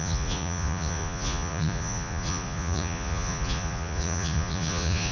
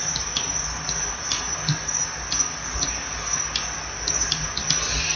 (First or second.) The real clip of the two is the second